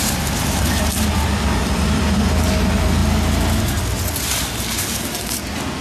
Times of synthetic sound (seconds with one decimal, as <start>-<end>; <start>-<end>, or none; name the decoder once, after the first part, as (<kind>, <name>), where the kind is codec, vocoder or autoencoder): none